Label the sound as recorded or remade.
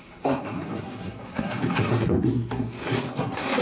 remade